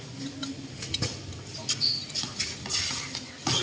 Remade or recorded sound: recorded